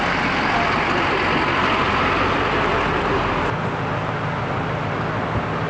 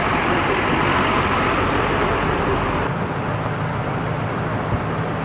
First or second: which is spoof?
second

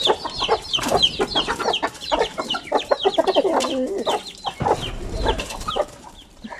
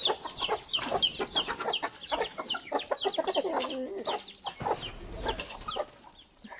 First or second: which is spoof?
first